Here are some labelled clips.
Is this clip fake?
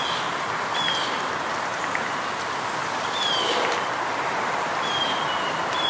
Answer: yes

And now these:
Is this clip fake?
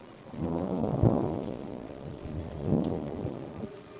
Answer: yes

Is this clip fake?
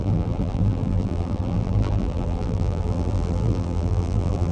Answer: yes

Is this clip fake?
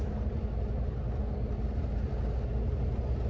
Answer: no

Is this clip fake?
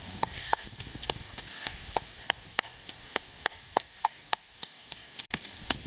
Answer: yes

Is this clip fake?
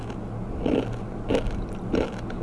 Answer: no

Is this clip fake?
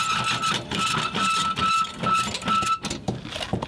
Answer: no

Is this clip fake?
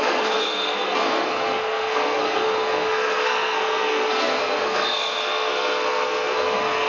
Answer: yes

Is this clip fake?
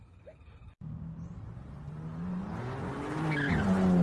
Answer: no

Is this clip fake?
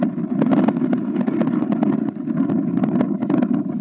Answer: no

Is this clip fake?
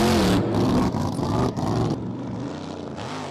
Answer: no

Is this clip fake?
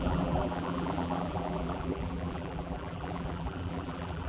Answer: yes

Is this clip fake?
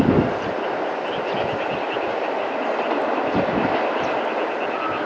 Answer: no